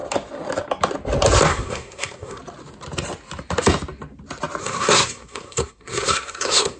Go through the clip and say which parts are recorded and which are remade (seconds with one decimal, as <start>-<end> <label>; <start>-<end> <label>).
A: 0.0-1.5 recorded; 1.5-2.4 remade; 2.4-4.6 recorded; 4.6-6.8 remade